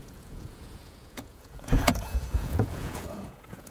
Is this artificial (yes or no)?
yes